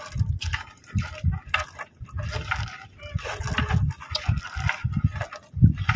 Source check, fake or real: real